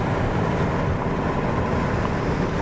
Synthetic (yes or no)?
no